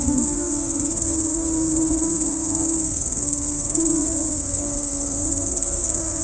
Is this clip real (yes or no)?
no